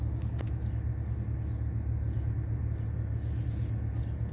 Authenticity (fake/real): real